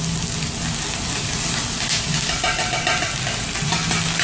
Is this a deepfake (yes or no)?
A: no